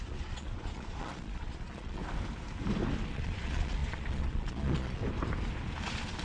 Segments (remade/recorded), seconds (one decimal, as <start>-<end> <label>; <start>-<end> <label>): 0.0-2.0 remade; 2.0-3.1 recorded; 3.1-5.0 remade; 5.0-6.2 recorded